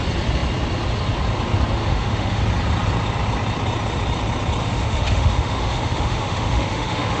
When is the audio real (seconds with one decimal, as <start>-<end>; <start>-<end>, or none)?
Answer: 0.0-1.8; 2.4-4.6